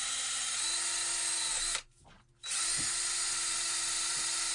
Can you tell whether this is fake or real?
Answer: real